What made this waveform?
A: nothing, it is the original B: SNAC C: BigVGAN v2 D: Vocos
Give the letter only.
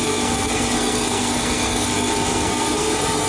B